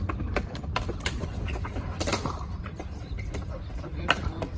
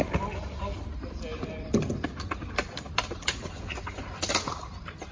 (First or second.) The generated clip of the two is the first